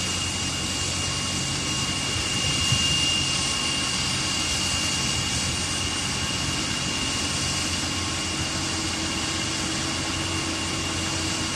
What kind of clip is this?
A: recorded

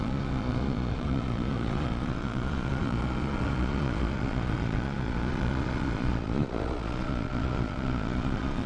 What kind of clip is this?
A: remade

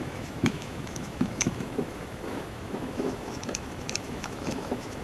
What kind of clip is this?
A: remade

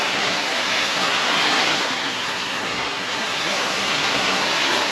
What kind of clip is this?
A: remade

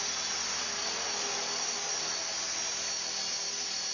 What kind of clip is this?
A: recorded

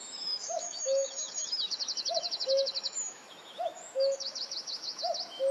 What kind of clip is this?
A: remade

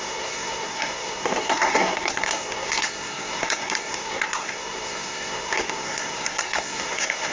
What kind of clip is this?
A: remade